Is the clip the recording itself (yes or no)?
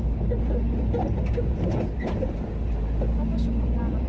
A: yes